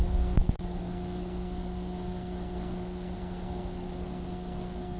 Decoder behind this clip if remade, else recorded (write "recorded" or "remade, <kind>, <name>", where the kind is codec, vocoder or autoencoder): remade, codec, SNAC